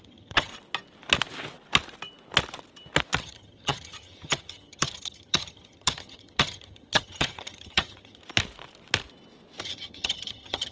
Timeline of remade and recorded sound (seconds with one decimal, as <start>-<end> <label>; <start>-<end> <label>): 0.0-0.5 remade; 0.5-3.2 recorded; 3.2-8.2 remade; 8.2-9.6 recorded; 9.6-10.7 remade